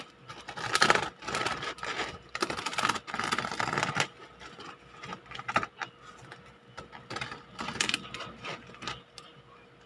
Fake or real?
fake